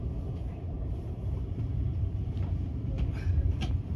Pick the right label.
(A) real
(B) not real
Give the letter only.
B